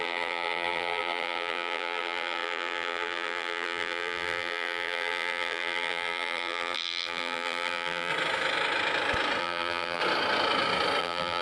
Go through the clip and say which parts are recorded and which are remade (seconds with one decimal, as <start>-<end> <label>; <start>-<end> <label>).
0.0-8.1 remade; 8.1-9.4 recorded; 9.4-10.0 remade; 10.0-11.0 recorded; 11.0-11.4 remade